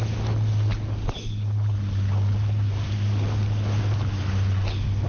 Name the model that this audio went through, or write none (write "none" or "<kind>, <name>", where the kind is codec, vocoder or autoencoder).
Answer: none